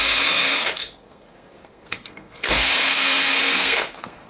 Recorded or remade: remade